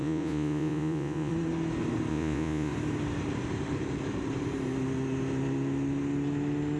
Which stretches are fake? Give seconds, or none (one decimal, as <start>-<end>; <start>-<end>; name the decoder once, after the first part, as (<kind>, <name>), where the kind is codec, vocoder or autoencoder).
0.0-1.3 (vocoder, Vocos); 2.1-2.7